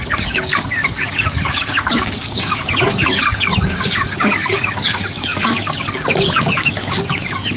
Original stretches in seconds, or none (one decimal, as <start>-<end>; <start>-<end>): none